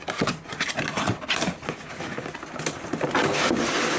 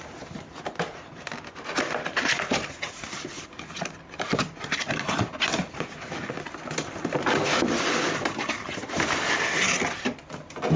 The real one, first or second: first